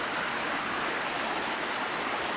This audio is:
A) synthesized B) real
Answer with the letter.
B